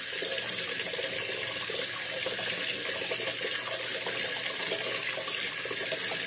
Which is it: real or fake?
real